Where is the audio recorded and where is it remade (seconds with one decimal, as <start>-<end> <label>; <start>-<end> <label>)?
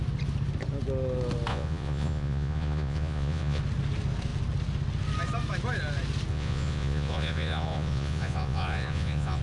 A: 0.0-1.5 recorded; 1.5-3.6 remade; 3.6-6.3 recorded; 6.3-9.4 remade